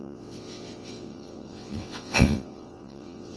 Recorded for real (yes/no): no